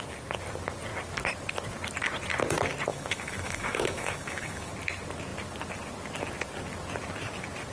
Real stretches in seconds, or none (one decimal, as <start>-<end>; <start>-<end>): 0.0-2.9; 4.7-7.7